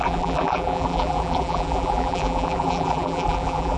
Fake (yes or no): yes